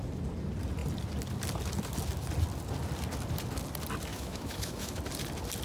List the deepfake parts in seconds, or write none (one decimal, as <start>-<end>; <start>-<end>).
4.1-5.0